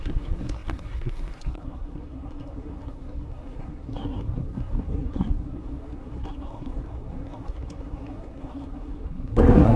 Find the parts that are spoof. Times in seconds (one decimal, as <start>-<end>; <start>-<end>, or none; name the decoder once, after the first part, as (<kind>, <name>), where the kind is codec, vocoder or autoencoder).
0.0-9.8 (codec, SNAC)